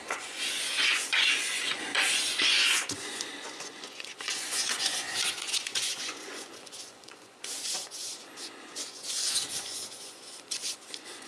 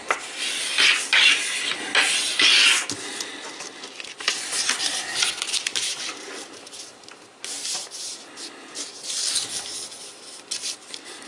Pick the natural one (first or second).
second